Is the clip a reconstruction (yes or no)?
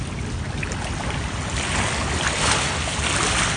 no